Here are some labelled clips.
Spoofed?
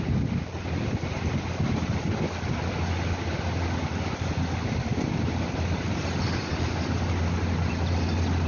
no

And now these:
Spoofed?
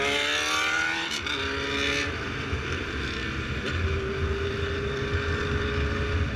no